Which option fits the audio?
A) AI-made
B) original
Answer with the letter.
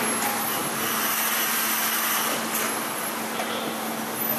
B